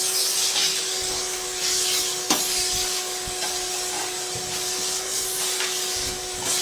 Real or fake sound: fake